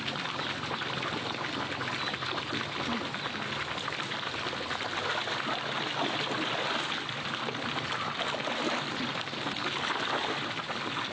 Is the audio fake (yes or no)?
no